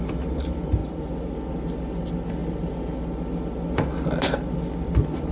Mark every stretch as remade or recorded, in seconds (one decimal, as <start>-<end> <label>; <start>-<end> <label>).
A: 0.0-5.3 recorded